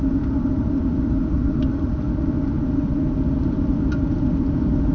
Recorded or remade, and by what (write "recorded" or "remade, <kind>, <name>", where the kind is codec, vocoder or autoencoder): recorded